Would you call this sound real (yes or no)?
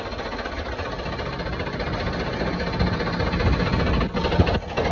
yes